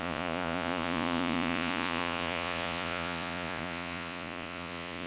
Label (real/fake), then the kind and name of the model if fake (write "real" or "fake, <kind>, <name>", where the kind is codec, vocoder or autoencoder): fake, vocoder, Vocos